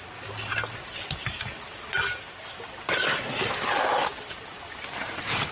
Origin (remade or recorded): recorded